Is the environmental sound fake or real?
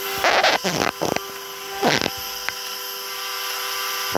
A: real